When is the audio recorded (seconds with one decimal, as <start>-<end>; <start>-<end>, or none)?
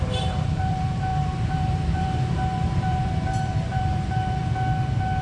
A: 4.4-5.2